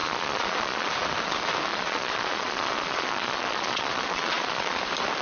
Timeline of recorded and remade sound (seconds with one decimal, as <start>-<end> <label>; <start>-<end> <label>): 0.0-0.9 remade; 0.9-1.7 recorded; 1.7-4.8 remade; 4.8-5.2 recorded